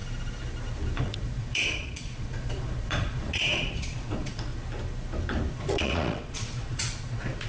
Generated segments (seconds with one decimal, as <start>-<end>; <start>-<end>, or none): 1.0-4.5; 5.5-7.5